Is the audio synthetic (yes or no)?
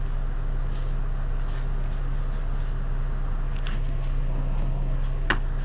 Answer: no